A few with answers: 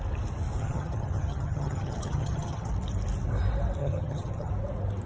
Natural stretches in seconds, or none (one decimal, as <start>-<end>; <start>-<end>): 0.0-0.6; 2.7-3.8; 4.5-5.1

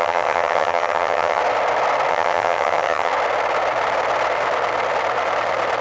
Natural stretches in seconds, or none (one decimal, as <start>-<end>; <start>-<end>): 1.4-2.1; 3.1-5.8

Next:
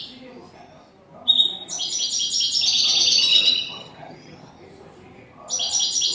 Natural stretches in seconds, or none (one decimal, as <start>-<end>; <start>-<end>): 0.0-3.3; 4.5-6.1